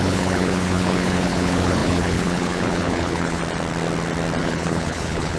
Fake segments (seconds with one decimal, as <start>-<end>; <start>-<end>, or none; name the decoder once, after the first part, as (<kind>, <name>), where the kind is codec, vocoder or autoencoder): 0.0-3.4 (codec, HILCodec); 4.4-5.4